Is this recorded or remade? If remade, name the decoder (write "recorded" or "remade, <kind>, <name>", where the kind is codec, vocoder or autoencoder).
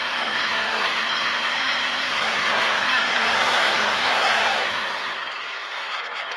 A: remade, codec, SNAC